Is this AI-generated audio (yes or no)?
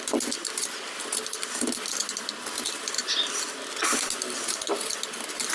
no